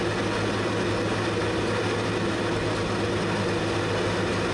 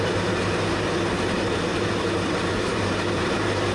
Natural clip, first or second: first